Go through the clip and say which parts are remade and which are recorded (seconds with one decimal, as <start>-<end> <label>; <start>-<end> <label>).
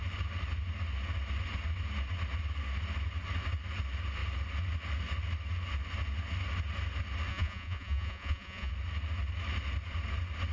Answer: 0.0-7.3 recorded; 7.3-8.7 remade; 8.7-10.5 recorded